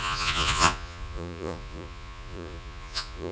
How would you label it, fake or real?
fake